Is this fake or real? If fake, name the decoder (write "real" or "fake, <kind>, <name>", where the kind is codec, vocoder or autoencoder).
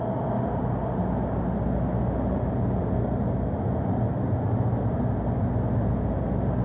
real